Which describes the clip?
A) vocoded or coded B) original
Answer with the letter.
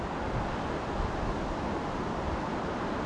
B